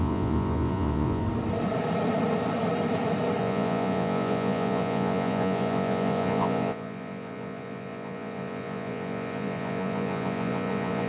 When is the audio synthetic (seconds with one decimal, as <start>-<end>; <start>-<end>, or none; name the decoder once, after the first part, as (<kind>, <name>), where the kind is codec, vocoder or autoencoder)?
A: 0.0-1.2 (vocoder, Vocos); 3.4-11.1